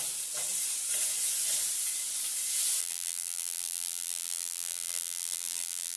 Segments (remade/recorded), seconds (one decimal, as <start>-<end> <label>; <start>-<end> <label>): 0.0-2.8 recorded; 2.8-6.0 remade